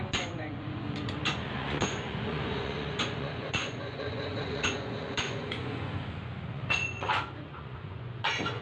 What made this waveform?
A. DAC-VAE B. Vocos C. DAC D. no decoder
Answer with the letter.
B